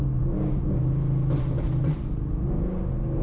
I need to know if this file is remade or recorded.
recorded